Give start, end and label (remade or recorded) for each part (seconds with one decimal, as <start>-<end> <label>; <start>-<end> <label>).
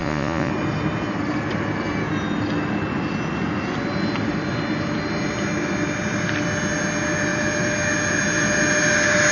0.0-0.5 remade; 0.5-9.3 recorded